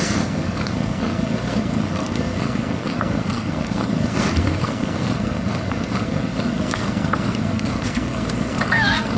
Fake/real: fake